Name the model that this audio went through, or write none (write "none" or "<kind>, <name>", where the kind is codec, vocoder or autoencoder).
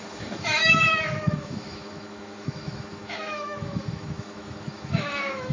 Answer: autoencoder, DAC-VAE